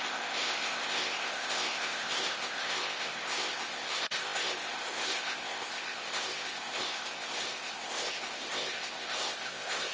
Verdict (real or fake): fake